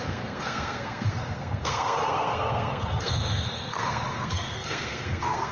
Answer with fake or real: fake